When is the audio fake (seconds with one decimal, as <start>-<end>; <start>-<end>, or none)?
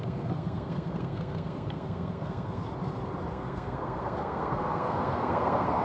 0.0-2.6; 3.3-5.8